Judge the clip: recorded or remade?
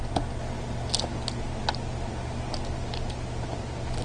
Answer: recorded